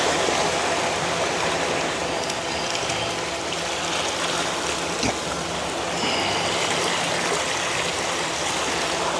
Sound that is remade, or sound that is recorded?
recorded